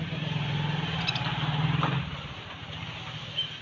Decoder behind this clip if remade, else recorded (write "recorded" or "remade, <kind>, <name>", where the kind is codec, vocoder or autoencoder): recorded